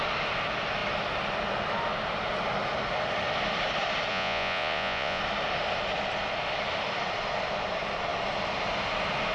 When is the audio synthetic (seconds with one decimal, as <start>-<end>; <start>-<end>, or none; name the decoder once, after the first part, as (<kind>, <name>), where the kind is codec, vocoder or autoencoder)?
4.1-5.2 (vocoder, Vocos)